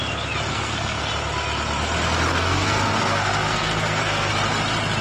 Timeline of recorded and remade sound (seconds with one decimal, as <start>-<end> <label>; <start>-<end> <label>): 0.0-0.5 recorded; 0.5-1.1 remade; 1.1-2.3 recorded; 2.3-4.3 remade; 4.3-5.0 recorded